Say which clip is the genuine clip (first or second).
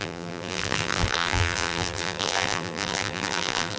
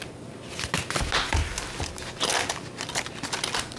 second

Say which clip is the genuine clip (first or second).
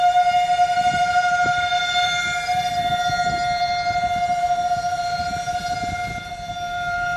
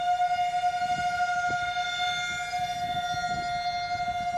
second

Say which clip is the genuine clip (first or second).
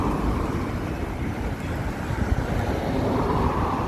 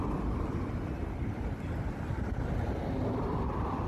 second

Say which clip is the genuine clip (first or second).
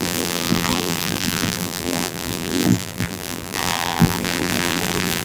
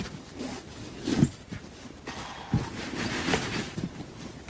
second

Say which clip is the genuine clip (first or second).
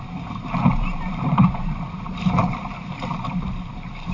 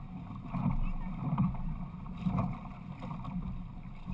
second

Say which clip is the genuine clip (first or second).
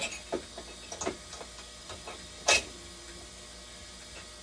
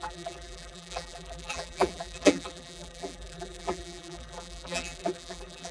first